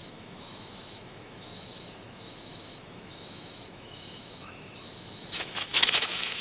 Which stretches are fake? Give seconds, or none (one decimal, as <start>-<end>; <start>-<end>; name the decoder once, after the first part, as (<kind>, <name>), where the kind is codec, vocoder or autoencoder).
0.0-6.4 (autoencoder, DAC-VAE)